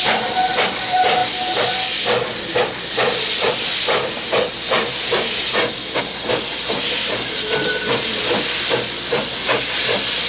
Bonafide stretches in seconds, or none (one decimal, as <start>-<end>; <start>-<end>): 0.0-10.3